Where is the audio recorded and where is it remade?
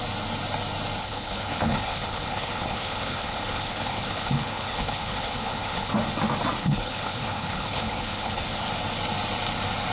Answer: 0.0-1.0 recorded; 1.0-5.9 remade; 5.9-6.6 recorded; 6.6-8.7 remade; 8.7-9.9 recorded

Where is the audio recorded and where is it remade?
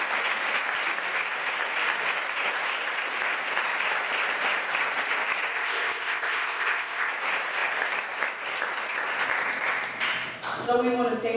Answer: 0.0-5.5 recorded; 5.5-7.1 remade; 7.1-11.4 recorded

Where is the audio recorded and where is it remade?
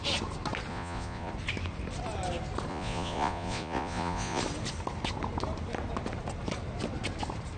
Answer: 0.0-0.7 recorded; 0.7-1.3 remade; 1.3-2.7 recorded; 2.7-4.4 remade; 4.4-7.6 recorded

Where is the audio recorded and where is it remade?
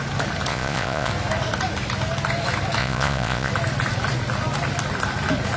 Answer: 0.0-0.5 recorded; 0.5-1.1 remade; 1.1-2.8 recorded; 2.8-3.5 remade; 3.5-5.6 recorded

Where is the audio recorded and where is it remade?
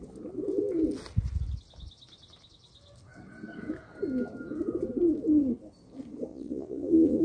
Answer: 0.0-6.3 recorded; 6.3-7.2 remade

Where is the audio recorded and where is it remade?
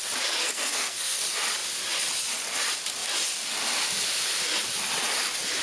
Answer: 0.0-0.4 recorded; 0.4-1.2 remade; 1.2-5.6 recorded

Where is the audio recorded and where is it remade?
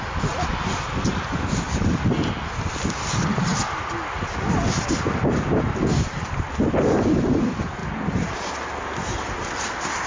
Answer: 0.0-10.1 recorded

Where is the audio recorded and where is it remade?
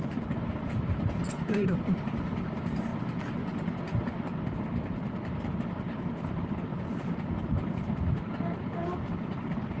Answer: 0.0-2.9 remade; 2.9-5.5 recorded; 5.5-9.8 remade